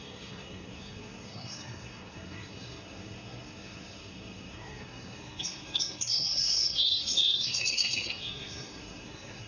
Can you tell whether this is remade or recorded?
remade